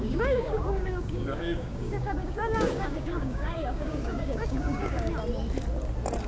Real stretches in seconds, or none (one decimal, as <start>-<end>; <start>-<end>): 5.1-6.3